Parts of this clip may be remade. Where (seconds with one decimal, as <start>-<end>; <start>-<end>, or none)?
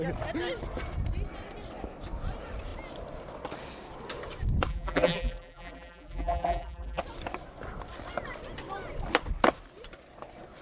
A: 4.7-7.0